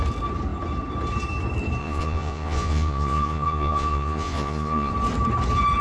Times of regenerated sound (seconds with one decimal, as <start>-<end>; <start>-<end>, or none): 1.8-4.9